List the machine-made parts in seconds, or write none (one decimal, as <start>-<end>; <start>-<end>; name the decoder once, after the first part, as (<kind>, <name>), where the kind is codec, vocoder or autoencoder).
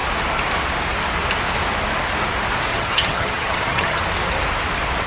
2.7-4.0 (vocoder, HiFi-GAN)